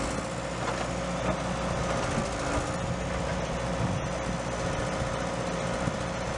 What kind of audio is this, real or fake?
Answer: real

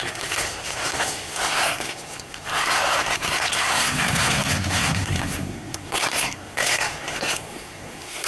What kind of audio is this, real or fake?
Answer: fake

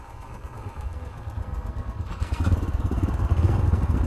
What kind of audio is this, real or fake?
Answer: fake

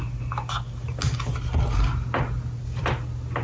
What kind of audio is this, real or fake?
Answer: real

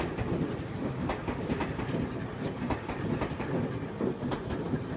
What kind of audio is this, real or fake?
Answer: real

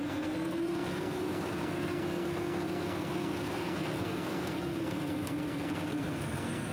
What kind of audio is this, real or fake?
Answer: fake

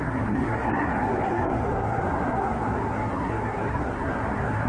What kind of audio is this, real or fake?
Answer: fake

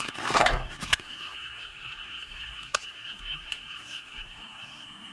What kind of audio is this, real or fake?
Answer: fake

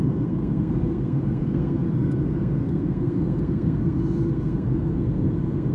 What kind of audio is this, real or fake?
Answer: fake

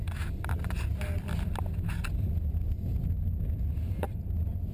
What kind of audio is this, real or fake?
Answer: real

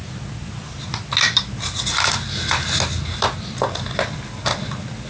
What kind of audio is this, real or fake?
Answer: real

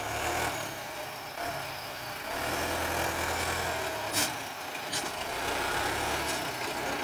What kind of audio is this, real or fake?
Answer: real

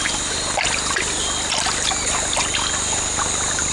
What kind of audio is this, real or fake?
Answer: real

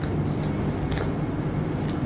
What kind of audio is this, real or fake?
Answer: real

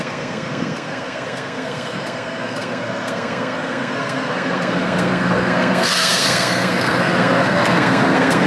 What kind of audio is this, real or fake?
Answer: fake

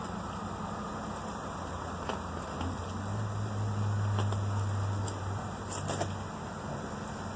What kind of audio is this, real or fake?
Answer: real